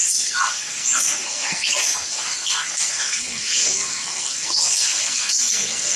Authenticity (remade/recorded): remade